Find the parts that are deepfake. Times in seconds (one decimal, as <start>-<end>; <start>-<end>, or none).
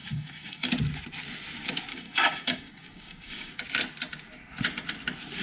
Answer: 0.0-0.7; 1.9-3.5